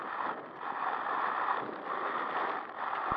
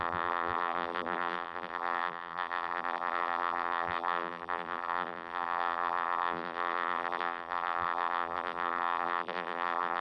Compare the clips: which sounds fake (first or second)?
second